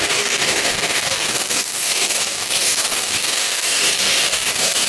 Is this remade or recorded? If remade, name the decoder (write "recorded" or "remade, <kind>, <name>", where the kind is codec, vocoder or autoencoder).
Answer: remade, codec, DAC